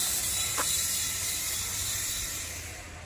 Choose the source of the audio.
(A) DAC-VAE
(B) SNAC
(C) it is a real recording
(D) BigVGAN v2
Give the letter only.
D